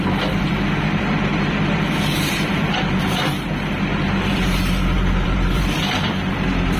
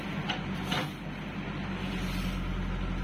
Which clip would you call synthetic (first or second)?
first